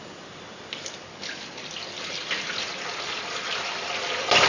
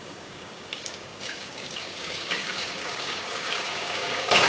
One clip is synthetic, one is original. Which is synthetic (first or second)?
second